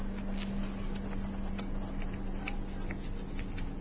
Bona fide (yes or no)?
yes